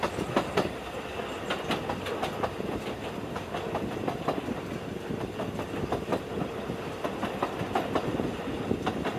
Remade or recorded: recorded